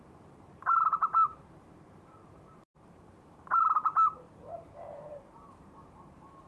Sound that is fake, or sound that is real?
fake